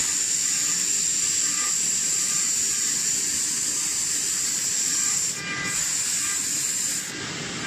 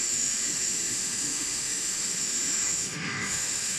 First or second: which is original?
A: first